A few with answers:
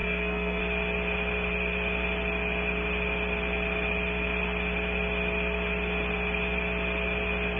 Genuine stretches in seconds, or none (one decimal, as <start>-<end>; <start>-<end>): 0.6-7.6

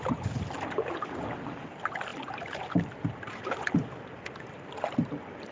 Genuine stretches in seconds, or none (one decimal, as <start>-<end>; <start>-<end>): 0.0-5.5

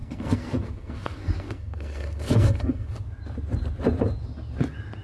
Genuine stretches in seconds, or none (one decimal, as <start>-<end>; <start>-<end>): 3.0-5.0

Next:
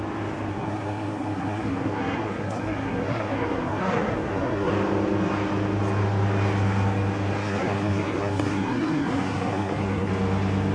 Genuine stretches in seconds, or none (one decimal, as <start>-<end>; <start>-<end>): 0.0-0.5; 4.7-7.4; 10.1-10.7

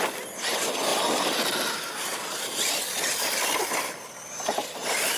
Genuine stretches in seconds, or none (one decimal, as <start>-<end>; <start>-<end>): 0.0-5.2